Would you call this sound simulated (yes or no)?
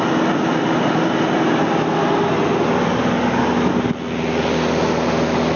no